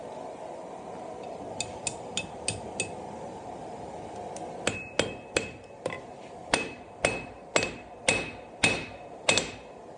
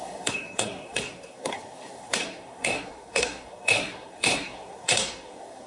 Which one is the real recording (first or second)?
first